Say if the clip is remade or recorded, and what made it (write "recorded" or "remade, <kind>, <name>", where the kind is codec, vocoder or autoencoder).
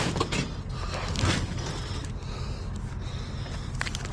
recorded